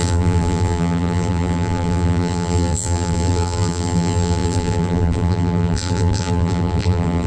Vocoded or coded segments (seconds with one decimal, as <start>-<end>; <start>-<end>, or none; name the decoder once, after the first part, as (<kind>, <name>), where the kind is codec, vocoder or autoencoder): 0.0-7.3 (vocoder, BigVGAN v2)